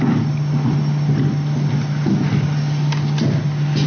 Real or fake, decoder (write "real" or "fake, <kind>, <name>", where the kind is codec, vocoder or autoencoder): real